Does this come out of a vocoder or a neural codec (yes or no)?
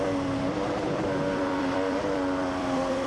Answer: yes